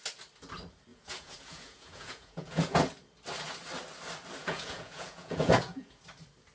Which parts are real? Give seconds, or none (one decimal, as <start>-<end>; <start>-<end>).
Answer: 0.0-0.9; 2.8-4.4; 6.0-6.5